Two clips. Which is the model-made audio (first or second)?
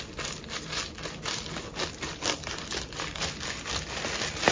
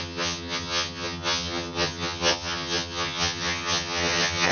second